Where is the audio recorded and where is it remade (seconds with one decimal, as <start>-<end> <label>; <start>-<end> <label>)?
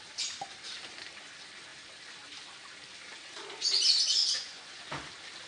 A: 0.0-4.2 recorded; 4.2-4.8 remade; 4.8-5.5 recorded